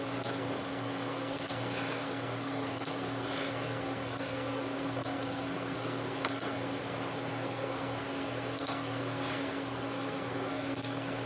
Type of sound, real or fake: fake